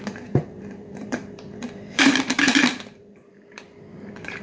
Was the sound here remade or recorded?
remade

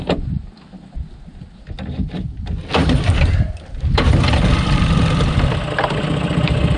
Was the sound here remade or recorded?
recorded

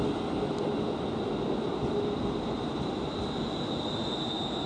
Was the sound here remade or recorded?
recorded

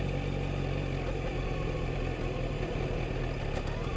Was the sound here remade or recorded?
recorded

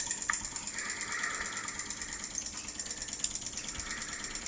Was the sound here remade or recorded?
recorded